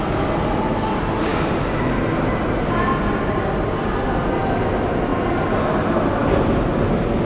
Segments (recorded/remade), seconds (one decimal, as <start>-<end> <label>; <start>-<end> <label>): 0.0-7.2 recorded